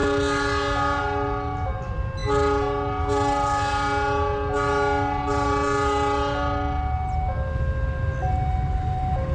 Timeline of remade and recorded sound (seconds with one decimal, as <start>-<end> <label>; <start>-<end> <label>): 0.0-9.3 recorded